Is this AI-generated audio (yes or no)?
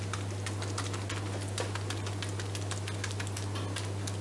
no